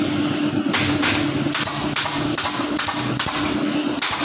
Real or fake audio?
real